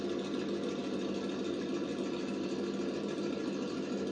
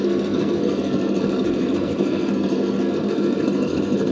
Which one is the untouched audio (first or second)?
first